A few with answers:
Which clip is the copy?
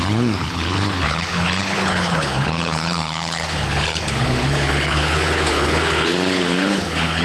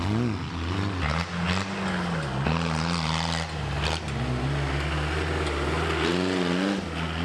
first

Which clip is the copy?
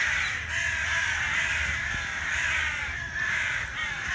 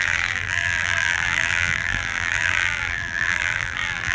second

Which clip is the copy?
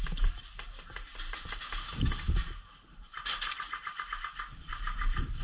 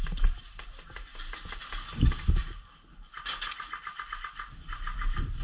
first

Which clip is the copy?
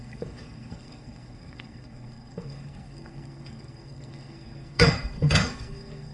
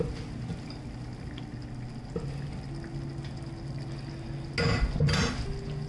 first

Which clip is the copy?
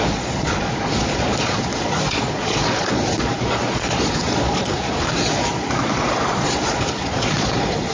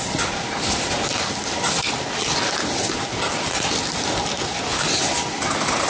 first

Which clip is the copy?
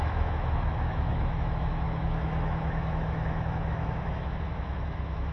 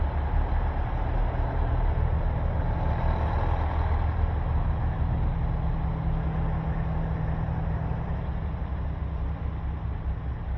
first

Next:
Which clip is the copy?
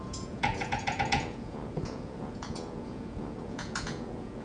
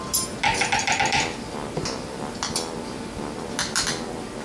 first